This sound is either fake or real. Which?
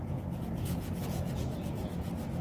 fake